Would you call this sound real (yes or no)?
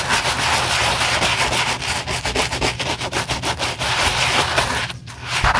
yes